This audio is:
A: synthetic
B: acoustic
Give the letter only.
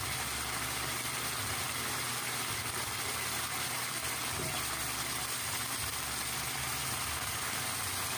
B